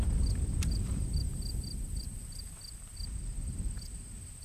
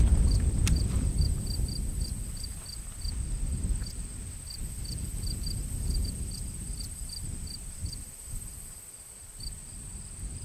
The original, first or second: first